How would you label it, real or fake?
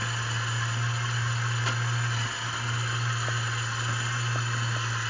real